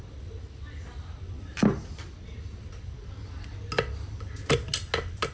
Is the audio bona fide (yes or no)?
yes